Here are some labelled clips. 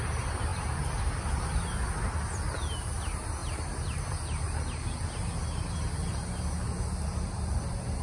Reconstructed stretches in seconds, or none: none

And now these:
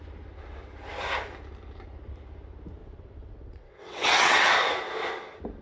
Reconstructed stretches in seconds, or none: 2.8-4.5 (vocoder, WaveNeXt)